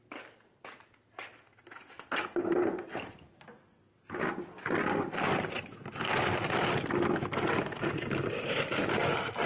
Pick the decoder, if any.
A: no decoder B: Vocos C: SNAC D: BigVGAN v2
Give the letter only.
A